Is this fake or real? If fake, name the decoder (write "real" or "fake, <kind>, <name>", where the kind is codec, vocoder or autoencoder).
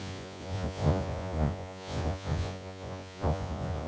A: fake, vocoder, Vocos